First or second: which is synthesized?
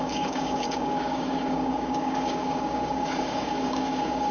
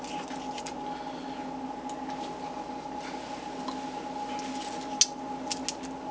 first